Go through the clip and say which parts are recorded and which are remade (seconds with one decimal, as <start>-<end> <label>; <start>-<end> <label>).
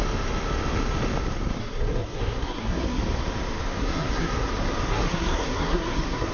0.0-1.6 recorded; 1.6-3.0 remade; 3.0-3.8 recorded; 3.8-4.5 remade; 4.5-4.9 recorded; 4.9-6.3 remade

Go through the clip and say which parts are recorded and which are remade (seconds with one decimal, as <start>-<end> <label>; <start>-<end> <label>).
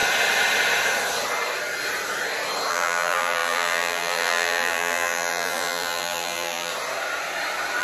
0.0-2.7 recorded; 2.7-6.7 remade; 6.7-7.8 recorded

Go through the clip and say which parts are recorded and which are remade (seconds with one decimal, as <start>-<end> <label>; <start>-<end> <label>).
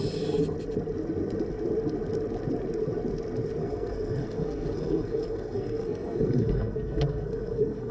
0.0-3.6 recorded; 3.6-7.9 remade